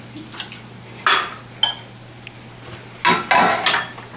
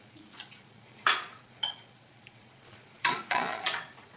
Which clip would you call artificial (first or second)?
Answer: second